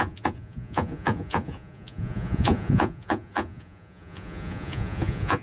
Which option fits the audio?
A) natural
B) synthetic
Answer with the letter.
B